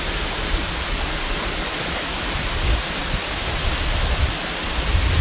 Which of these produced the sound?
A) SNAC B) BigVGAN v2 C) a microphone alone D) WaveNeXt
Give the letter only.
C